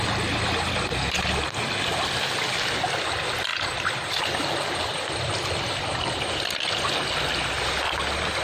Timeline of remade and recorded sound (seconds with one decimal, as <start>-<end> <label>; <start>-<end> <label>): 0.0-8.4 recorded